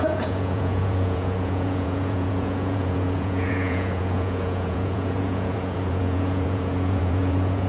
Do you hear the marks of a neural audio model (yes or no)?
yes